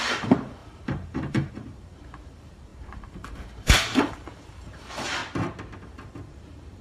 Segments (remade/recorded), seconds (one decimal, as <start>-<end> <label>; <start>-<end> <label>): 0.0-5.2 remade; 5.2-5.8 recorded; 5.8-6.8 remade